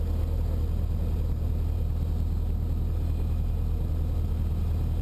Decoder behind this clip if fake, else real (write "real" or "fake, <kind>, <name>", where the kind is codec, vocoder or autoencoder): real